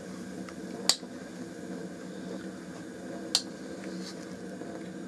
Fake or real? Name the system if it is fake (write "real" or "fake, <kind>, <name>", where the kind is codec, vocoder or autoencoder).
real